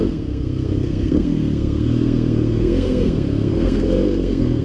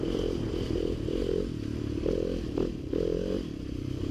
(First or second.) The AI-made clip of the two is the first